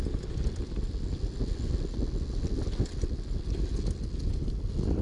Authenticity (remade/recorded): recorded